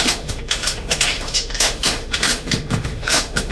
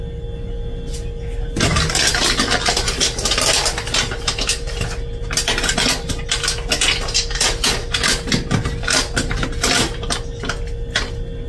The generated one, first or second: first